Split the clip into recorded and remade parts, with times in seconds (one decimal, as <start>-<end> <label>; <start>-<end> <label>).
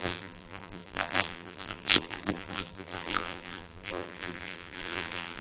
0.0-5.4 remade